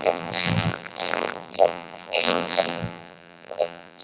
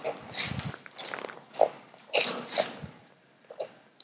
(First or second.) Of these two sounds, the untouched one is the second